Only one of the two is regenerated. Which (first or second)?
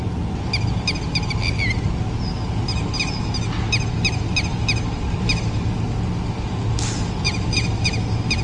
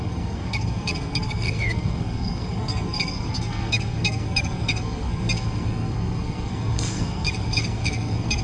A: second